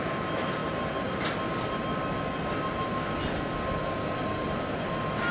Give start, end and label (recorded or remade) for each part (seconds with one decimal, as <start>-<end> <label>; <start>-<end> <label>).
0.0-5.3 recorded